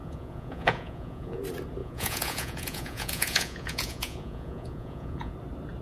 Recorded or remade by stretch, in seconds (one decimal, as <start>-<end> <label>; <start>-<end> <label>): 0.0-1.4 remade; 1.4-1.8 recorded; 1.8-5.3 remade; 5.3-5.8 recorded